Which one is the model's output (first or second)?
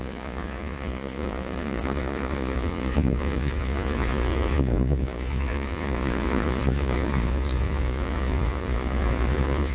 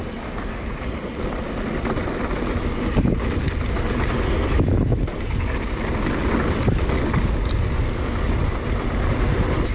first